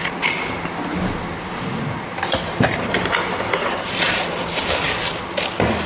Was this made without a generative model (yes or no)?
yes